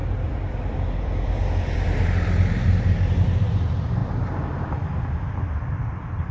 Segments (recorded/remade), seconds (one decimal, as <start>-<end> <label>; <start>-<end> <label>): 0.0-6.3 remade